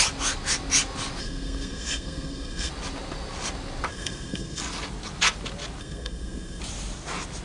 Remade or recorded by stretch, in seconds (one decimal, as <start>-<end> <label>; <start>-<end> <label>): 0.0-1.2 recorded; 1.2-2.7 remade; 2.7-3.9 recorded; 3.9-4.6 remade; 4.6-5.8 recorded; 5.8-6.6 remade; 6.6-7.4 recorded